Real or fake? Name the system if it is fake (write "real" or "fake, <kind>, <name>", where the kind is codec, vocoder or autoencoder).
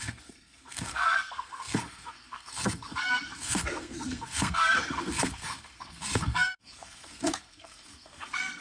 fake, codec, SNAC